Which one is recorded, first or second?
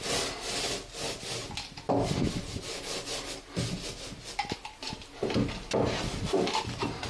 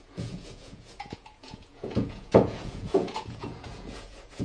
first